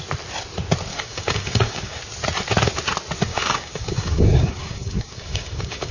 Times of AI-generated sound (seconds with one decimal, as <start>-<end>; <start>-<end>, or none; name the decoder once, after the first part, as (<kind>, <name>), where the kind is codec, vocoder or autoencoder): 0.9-2.0 (codec, DAC); 3.3-5.9